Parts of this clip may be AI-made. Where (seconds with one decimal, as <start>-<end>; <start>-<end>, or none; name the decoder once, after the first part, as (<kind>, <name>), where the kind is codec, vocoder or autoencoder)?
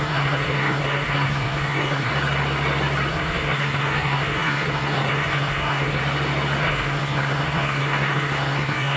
0.0-2.1 (codec, SNAC); 3.1-6.0; 6.6-9.0